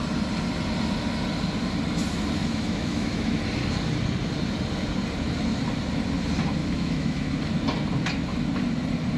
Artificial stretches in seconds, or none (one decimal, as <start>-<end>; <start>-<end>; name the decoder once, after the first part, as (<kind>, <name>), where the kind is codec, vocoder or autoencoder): 2.4-3.4 (autoencoder, DAC-VAE); 6.6-7.4

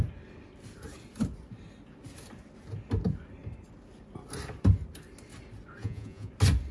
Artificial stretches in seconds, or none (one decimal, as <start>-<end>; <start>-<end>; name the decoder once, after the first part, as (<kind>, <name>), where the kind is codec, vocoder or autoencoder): 5.8-6.3 (vocoder, Vocos)

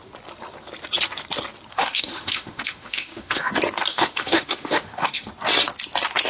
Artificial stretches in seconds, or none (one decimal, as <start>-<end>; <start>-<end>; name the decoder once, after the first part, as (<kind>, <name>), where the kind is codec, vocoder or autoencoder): 1.7-3.5 (autoencoder, DAC-VAE); 3.9-5.3